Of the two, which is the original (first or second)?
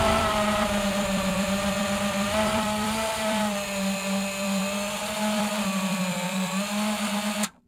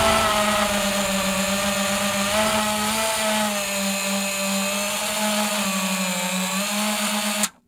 second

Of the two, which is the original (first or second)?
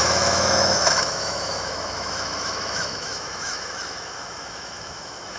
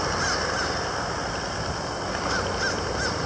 second